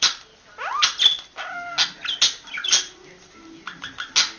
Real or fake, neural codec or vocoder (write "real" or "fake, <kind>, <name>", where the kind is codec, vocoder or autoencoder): real